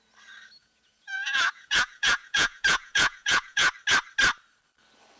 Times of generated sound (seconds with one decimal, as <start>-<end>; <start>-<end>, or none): 0.6-3.7